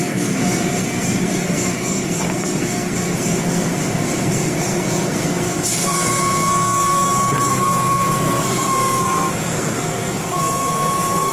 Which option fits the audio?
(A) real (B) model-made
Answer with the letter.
B